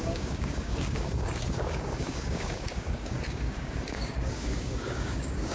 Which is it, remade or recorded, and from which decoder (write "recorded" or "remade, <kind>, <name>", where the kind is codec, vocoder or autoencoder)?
remade, codec, DAC